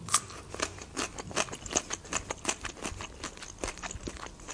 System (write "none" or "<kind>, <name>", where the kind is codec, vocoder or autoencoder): none